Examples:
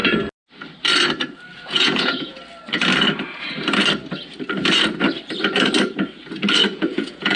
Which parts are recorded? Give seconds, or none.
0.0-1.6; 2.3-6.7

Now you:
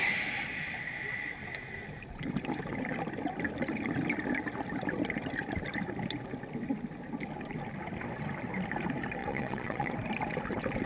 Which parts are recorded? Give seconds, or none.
0.0-9.2; 9.9-10.9

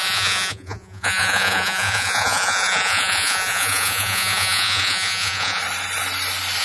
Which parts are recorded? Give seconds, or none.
5.6-6.6

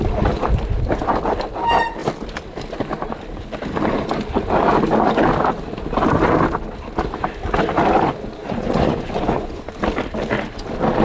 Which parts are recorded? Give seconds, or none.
0.0-8.4; 9.7-11.0